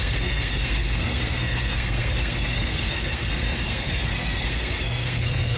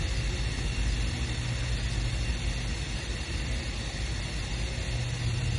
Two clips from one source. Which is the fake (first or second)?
first